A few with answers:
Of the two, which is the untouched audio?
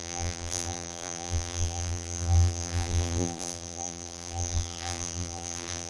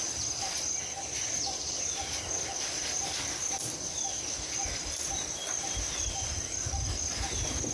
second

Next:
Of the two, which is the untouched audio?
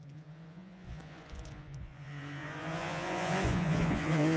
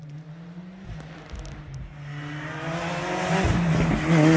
second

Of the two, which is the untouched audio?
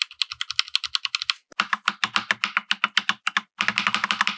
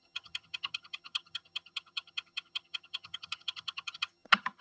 first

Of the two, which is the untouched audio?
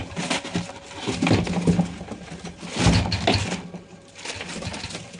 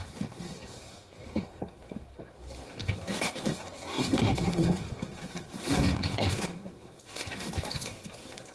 first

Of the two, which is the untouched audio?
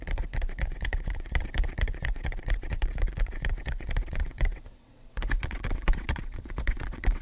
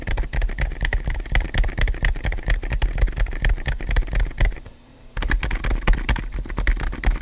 second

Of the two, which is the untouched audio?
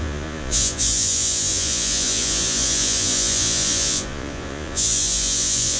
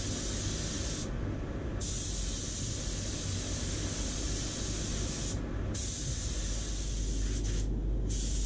second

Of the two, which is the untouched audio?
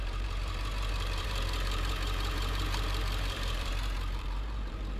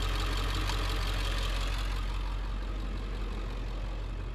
second